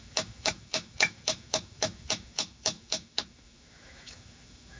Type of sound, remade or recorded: remade